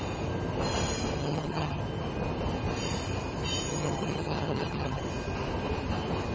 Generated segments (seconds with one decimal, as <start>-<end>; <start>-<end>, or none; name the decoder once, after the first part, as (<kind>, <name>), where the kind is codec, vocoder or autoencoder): 1.2-1.8 (vocoder, HiFi-GAN); 3.7-5.0